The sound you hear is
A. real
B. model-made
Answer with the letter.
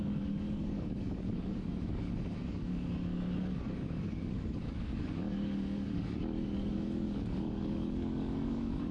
B